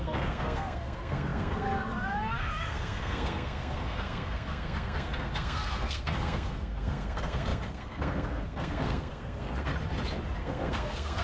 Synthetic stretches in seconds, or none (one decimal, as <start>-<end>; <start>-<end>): 0.0-9.7; 10.4-11.2